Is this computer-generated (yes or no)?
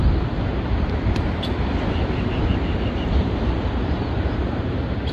yes